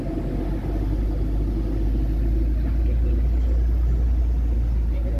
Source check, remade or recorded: recorded